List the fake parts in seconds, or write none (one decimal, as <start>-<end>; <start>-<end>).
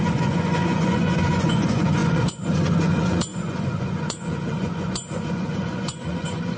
0.0-6.6